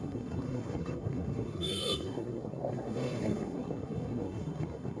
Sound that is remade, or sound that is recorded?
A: remade